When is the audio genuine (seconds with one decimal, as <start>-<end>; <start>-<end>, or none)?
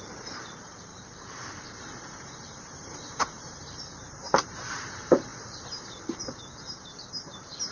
5.3-6.0